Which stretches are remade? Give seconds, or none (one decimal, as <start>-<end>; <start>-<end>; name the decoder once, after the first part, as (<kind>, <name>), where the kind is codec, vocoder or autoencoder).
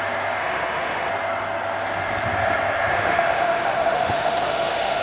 0.4-1.1 (autoencoder, DAC-VAE); 2.9-5.0